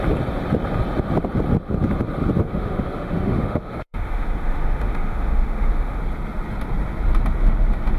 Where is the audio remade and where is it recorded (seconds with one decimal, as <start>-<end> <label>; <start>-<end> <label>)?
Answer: 0.0-2.4 recorded; 2.4-6.0 remade; 6.0-8.0 recorded